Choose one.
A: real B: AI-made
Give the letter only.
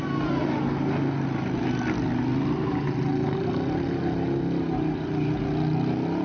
A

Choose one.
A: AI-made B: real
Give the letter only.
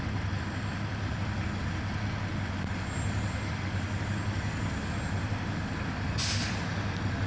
B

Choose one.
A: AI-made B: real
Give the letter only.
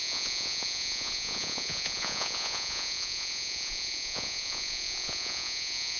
A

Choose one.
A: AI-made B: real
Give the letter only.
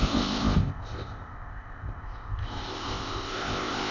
A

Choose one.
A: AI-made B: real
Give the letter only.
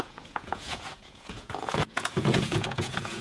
A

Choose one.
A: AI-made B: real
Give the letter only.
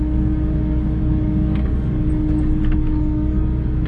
A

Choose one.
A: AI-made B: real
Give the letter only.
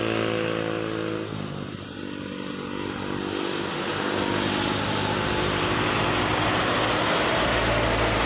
B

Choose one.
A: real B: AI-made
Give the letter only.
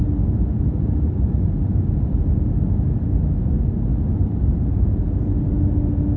A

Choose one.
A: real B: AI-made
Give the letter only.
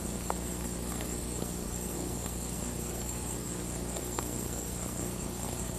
B